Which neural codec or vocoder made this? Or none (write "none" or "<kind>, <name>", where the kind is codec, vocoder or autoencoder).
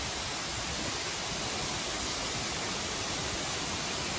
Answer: none